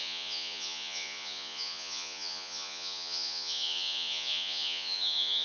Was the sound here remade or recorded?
remade